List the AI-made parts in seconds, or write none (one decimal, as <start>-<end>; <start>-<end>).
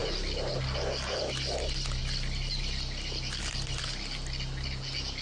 none